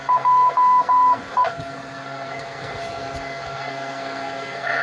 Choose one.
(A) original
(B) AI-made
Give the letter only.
B